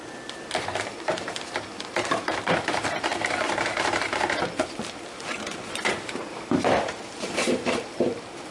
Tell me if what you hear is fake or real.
fake